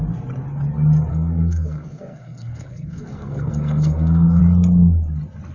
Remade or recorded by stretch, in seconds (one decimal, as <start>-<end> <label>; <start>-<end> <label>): 0.0-1.1 recorded; 1.1-4.4 remade; 4.4-5.5 recorded